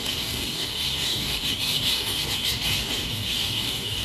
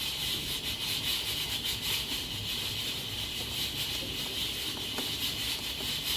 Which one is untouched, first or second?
second